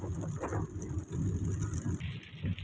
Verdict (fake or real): real